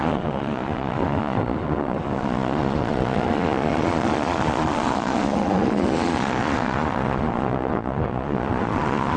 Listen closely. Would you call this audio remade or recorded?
remade